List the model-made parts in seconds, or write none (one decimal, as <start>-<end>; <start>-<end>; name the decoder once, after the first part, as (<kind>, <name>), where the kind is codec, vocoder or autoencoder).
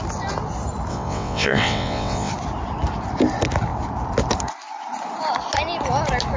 0.9-2.3 (vocoder, WaveNeXt)